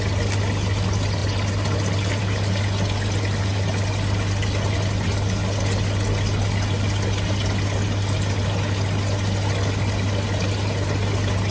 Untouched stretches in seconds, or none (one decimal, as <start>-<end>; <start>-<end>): 0.0-11.5